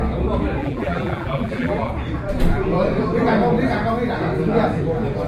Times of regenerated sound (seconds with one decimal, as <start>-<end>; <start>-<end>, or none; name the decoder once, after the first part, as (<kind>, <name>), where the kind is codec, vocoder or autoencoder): 0.6-1.9 (vocoder, BigVGAN v2)